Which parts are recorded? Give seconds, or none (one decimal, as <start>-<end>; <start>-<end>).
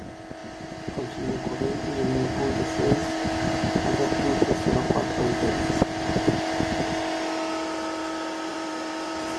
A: 0.0-8.5